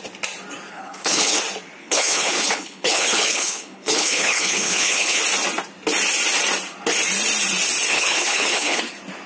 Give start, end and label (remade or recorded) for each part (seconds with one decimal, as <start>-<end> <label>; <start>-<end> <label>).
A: 0.0-0.7 recorded; 0.7-1.4 remade; 1.4-1.8 recorded; 1.8-5.2 remade; 5.2-7.9 recorded; 7.9-8.8 remade; 8.8-9.3 recorded